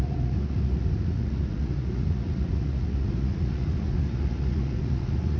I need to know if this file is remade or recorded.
remade